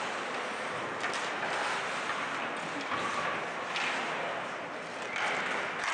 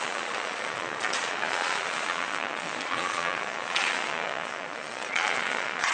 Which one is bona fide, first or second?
first